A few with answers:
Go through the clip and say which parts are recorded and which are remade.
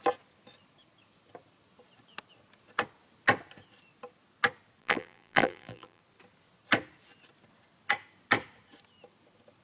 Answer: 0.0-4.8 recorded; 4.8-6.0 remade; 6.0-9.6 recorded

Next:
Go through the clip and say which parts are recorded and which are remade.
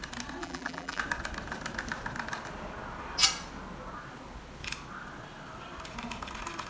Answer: 0.0-0.4 recorded; 0.4-1.0 remade; 1.0-6.7 recorded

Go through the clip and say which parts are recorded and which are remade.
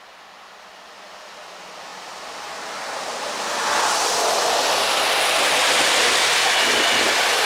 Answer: 0.0-7.5 recorded